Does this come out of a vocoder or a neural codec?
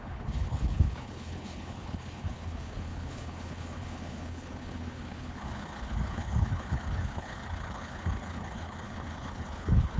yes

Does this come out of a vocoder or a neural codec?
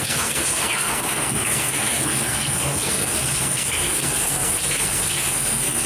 yes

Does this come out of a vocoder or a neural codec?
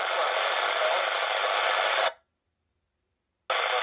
no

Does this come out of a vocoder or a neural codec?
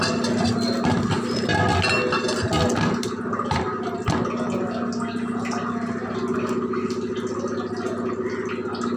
no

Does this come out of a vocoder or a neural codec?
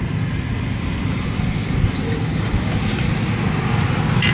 no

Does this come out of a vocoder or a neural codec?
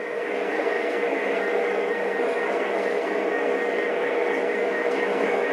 yes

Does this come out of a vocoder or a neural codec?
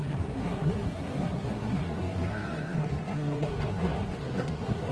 yes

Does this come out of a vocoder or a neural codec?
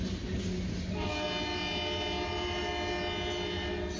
no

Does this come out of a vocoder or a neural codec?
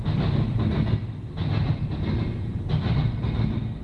no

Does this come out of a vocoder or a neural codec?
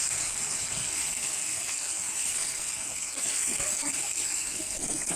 yes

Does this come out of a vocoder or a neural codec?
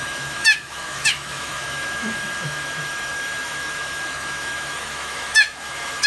yes